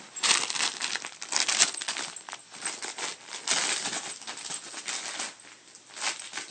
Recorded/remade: recorded